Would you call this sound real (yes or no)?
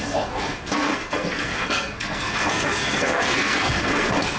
no